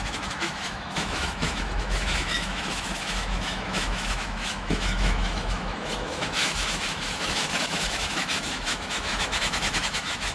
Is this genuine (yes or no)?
no